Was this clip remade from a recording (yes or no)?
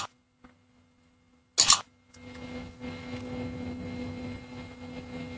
no